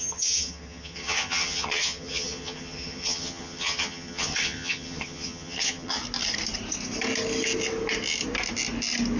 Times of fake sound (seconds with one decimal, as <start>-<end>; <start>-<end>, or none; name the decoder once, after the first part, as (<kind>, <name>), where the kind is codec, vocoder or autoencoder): 0.0-6.0 (vocoder, HiFi-GAN)